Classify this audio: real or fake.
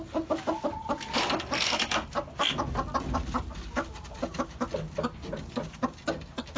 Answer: real